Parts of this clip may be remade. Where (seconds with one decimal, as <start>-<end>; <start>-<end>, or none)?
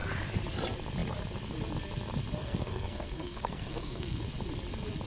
2.4-4.2